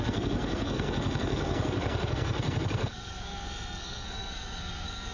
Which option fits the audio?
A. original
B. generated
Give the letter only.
B